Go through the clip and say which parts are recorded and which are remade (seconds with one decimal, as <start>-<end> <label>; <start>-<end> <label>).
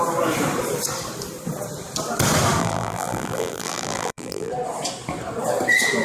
0.0-2.6 recorded; 2.6-4.5 remade; 4.5-6.0 recorded